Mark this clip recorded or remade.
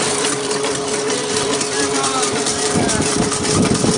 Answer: remade